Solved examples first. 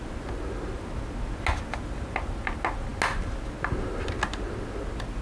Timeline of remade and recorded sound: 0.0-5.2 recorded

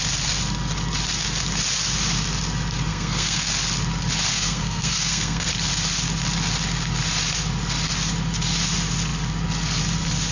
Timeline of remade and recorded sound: 0.0-2.9 recorded; 2.9-3.5 remade; 3.5-4.3 recorded; 4.3-5.5 remade; 5.5-10.3 recorded

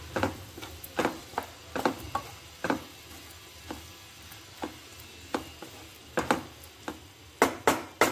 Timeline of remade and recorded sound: 0.0-8.1 recorded

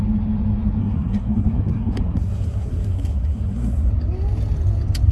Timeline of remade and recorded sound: 0.0-0.8 recorded; 0.8-3.9 remade; 3.9-5.1 recorded

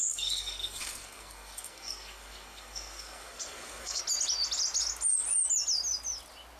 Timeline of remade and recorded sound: 0.0-4.0 remade; 4.0-6.6 recorded

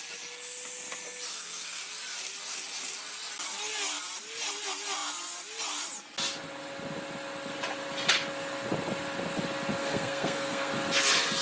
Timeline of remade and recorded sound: 0.0-1.3 recorded; 1.3-1.8 remade; 1.8-9.8 recorded; 9.8-10.7 remade; 10.7-11.4 recorded

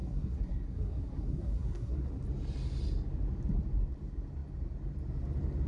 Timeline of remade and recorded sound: 0.0-2.1 remade; 2.1-5.7 recorded

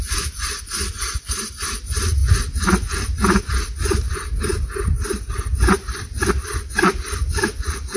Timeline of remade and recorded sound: 0.0-8.0 recorded